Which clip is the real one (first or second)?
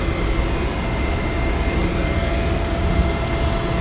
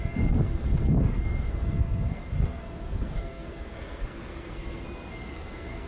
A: first